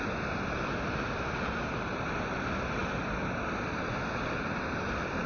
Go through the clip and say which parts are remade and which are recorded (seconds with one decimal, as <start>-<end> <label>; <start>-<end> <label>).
0.0-5.3 recorded